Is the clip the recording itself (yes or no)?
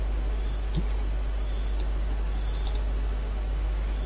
yes